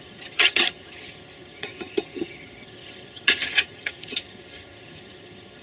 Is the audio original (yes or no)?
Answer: no